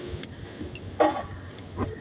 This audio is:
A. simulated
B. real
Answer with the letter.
B